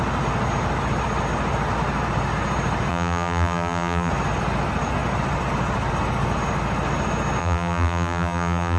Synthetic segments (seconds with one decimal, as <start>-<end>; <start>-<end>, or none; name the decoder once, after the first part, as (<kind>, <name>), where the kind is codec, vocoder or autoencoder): 2.9-4.1 (vocoder, BigVGAN v2); 7.4-8.8